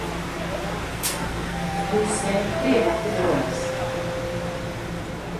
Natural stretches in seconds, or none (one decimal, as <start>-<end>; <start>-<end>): 0.0-0.9; 1.8-2.8; 3.3-5.4

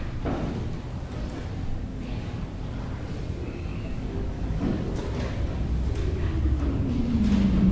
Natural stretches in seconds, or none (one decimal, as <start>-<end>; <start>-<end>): 0.0-1.9; 2.5-3.7; 5.0-6.0; 6.6-7.7

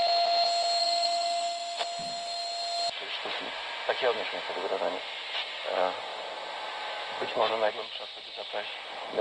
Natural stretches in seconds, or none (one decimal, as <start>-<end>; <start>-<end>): 0.0-0.8; 1.8-9.2

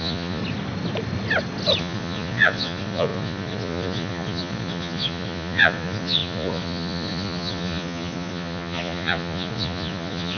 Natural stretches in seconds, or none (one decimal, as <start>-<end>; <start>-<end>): 0.4-1.8

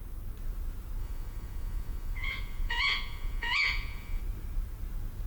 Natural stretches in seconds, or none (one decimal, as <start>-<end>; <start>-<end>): 0.0-1.0; 4.2-5.3